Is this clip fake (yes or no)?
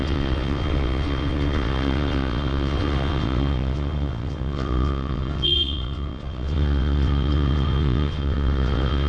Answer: yes